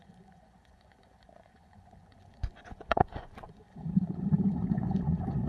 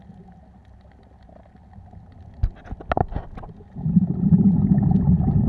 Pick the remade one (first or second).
first